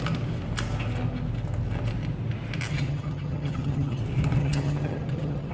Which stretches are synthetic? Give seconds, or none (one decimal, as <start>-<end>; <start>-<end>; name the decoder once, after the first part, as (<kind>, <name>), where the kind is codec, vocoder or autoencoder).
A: 2.7-4.0 (vocoder, HiFi-GAN); 4.4-5.5